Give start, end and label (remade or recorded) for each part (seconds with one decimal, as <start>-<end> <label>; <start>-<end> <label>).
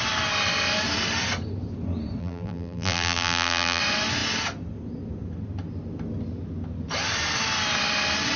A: 0.0-2.2 recorded; 2.2-3.8 remade; 3.8-8.4 recorded